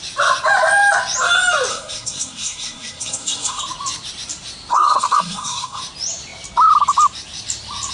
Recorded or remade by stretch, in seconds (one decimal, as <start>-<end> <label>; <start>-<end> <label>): 0.0-1.7 recorded; 1.7-3.6 remade; 3.6-4.7 recorded; 4.7-5.8 remade; 5.8-7.9 recorded